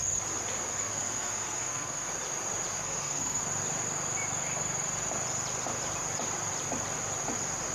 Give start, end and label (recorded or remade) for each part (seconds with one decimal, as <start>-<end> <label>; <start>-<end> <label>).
0.0-0.7 recorded; 0.7-2.1 remade; 2.1-2.7 recorded; 2.7-3.4 remade; 3.4-7.7 recorded